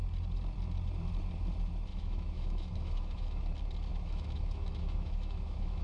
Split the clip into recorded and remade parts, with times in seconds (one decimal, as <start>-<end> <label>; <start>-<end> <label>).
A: 0.0-1.9 recorded; 1.9-3.4 remade; 3.4-3.9 recorded; 3.9-5.8 remade